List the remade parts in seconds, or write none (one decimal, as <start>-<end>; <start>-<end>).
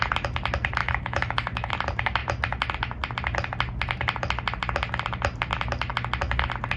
0.8-1.7